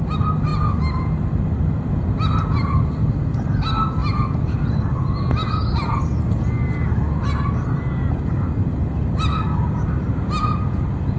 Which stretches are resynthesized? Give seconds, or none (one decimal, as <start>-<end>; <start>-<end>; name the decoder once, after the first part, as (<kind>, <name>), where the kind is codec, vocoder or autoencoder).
none